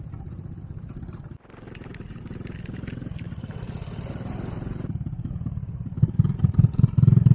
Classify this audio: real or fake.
real